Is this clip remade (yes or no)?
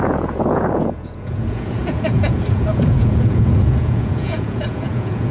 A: yes